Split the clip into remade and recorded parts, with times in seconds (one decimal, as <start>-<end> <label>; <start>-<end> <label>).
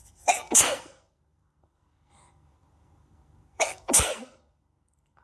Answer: 0.0-5.2 remade